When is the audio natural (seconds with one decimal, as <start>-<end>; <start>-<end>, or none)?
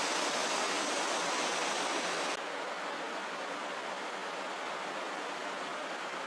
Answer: 0.0-6.3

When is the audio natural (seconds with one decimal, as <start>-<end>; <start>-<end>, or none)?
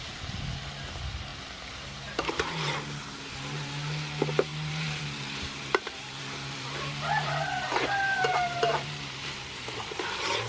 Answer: 0.0-1.3; 3.3-4.5; 9.5-10.5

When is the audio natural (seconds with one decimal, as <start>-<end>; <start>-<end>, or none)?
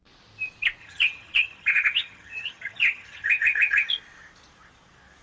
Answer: 0.0-0.8; 3.9-5.2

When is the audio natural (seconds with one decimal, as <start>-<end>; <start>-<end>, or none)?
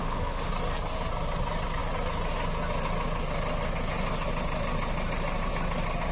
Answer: 0.5-6.1